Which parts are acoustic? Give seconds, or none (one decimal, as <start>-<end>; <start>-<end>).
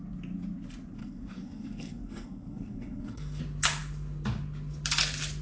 0.0-1.0; 3.4-5.4